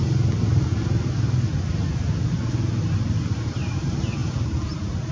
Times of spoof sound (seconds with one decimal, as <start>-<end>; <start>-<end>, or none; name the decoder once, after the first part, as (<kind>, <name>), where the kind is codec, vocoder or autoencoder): none